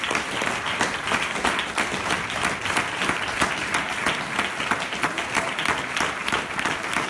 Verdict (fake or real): real